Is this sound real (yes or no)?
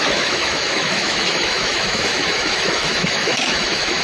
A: no